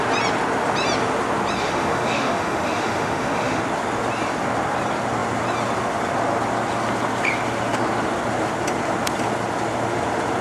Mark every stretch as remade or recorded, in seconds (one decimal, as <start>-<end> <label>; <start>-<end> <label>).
0.0-1.6 recorded; 1.6-3.6 remade; 3.6-10.4 recorded